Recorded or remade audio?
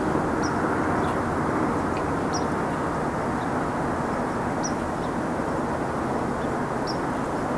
recorded